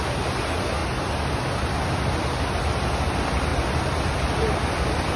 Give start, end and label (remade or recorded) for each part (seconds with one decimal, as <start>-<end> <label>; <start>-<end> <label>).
0.0-5.2 recorded